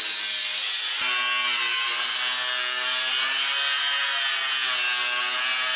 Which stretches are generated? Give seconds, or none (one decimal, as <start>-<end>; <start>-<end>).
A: none

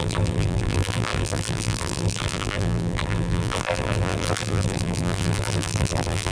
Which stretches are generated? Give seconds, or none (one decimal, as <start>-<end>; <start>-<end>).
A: 0.0-6.3

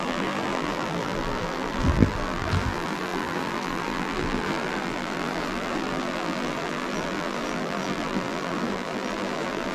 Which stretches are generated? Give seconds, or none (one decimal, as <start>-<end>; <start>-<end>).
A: 0.0-9.7